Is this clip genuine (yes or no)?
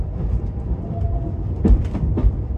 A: yes